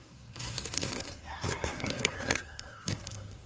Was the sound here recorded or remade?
remade